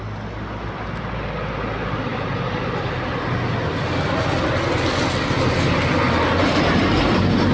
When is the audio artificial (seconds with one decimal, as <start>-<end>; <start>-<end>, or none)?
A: none